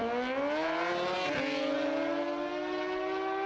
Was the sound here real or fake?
real